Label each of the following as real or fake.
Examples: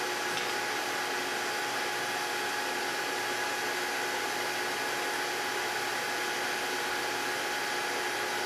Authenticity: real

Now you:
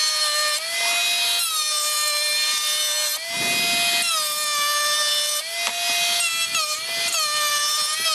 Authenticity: real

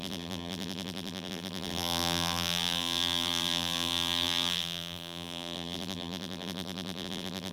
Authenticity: fake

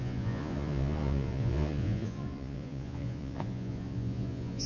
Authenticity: fake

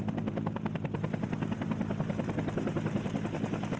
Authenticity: real